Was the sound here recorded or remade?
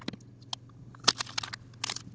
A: recorded